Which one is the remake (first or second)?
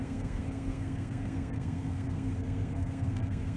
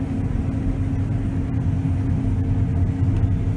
first